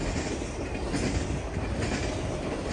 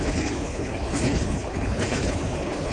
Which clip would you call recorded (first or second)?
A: first